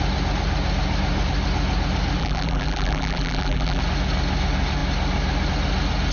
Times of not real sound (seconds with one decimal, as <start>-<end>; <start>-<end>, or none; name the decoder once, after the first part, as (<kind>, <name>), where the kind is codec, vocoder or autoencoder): 2.2-3.8 (vocoder, BigVGAN v2)

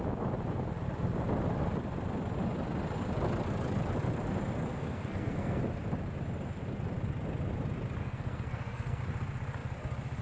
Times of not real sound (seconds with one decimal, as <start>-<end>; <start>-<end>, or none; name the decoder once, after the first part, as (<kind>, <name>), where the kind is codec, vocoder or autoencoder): 4.7-5.6 (codec, SNAC); 8.0-9.0

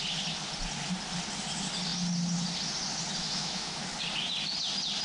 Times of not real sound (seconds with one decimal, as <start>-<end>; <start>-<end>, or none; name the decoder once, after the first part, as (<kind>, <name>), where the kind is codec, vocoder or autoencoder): 3.2-3.8 (autoencoder, DAC-VAE)